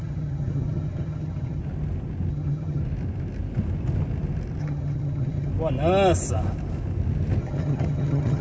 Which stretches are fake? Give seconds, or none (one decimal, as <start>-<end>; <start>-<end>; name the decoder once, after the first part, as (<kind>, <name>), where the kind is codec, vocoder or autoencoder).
0.0-1.6 (vocoder, HiFi-GAN); 2.3-2.8; 4.6-5.5; 7.4-8.4